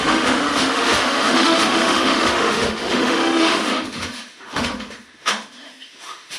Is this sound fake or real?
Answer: fake